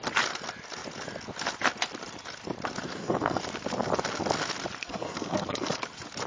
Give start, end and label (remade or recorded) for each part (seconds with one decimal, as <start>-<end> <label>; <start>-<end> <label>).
0.0-2.9 recorded; 2.9-3.4 remade; 3.4-4.8 recorded; 4.8-5.8 remade; 5.8-6.3 recorded